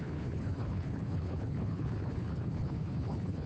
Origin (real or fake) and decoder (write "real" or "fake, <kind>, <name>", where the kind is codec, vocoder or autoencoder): fake, codec, HILCodec